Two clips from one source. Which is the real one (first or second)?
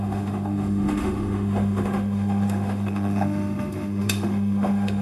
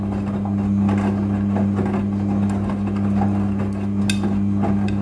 second